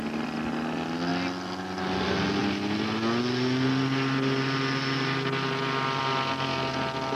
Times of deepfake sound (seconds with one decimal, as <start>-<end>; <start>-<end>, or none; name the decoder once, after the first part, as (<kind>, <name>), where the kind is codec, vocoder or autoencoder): none